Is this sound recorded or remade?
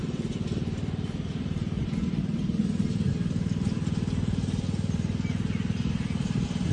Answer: recorded